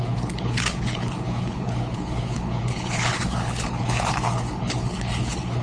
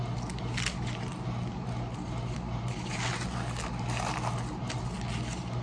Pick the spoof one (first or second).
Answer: first